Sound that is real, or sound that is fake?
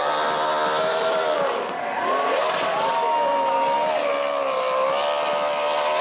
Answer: real